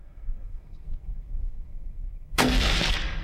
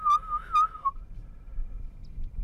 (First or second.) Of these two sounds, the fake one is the first